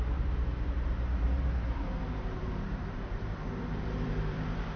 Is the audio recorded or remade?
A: remade